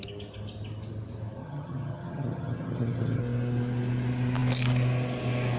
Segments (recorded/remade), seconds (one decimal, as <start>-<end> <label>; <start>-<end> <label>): 0.0-1.4 recorded; 1.4-3.2 remade; 3.2-5.6 recorded